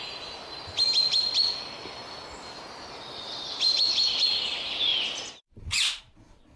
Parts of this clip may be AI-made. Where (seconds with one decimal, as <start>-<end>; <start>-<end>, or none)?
4.9-6.0